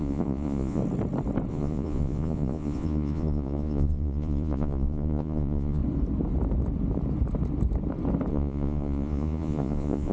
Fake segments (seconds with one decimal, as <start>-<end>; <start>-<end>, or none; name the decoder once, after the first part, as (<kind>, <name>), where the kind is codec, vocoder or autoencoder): 0.0-0.8 (vocoder, Vocos); 1.5-5.8; 8.3-10.1